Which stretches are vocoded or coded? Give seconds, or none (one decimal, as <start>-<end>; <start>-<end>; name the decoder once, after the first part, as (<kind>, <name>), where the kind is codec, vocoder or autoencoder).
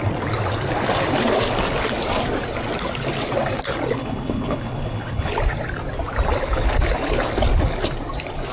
4.0-5.3 (codec, HILCodec)